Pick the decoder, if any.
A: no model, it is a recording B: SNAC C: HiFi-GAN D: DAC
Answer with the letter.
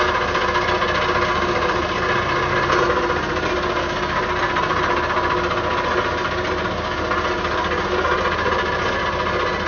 A